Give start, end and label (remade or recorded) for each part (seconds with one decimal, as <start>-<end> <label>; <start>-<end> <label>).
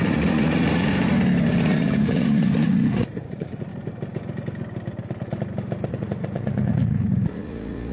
0.0-0.9 remade; 0.9-1.6 recorded; 1.6-3.7 remade; 3.7-5.9 recorded; 5.9-7.9 remade